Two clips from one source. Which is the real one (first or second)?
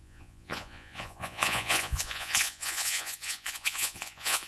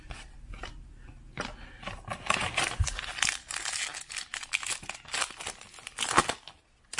second